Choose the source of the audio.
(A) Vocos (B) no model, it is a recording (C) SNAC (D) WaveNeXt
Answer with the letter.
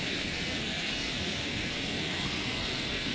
C